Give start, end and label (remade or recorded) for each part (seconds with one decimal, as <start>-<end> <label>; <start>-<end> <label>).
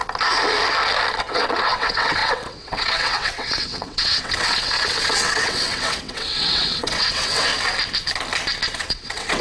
0.0-1.2 recorded; 1.2-7.5 remade; 7.5-8.8 recorded; 8.8-9.4 remade